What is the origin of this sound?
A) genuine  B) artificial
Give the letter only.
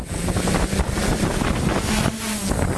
A